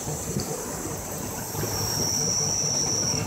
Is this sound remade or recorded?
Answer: remade